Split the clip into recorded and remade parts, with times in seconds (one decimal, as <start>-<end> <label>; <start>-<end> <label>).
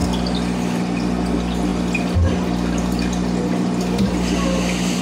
0.0-5.0 recorded